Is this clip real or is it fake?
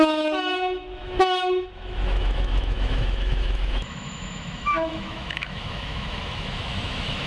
fake